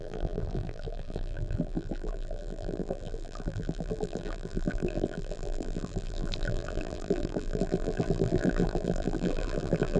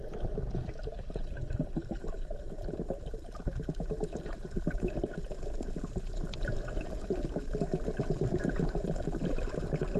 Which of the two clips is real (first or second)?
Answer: second